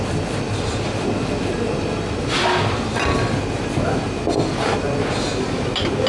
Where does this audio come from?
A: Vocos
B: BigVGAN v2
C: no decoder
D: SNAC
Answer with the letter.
B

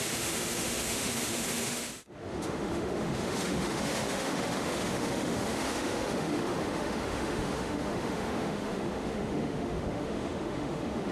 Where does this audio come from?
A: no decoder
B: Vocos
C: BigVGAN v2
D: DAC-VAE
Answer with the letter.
D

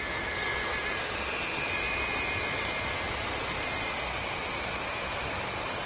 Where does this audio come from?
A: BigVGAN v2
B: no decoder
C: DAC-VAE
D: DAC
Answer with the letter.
B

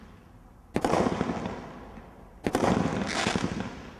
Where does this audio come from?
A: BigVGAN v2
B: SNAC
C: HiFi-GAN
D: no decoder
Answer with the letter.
D